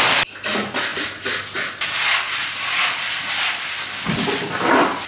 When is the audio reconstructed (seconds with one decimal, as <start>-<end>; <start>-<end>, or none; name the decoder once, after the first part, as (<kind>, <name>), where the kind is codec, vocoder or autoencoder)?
none